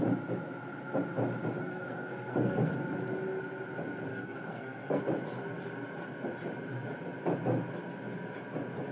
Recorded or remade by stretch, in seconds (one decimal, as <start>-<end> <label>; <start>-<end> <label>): 0.0-1.6 recorded; 1.6-2.7 remade; 2.7-4.1 recorded; 4.1-5.0 remade; 5.0-8.9 recorded